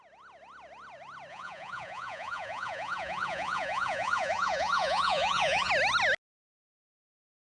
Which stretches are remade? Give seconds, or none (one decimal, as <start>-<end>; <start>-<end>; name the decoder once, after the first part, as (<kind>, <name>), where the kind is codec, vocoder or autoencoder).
1.3-5.7 (vocoder, Vocos)